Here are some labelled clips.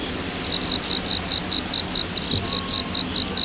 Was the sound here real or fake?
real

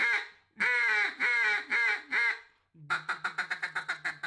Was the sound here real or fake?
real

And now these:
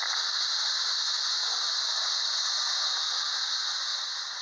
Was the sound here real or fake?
real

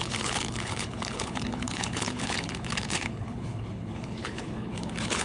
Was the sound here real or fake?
fake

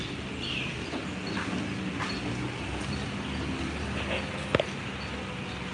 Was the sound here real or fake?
real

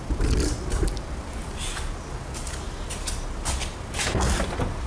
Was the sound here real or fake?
real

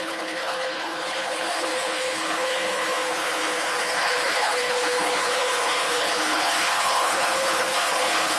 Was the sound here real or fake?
fake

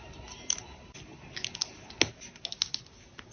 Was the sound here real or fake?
real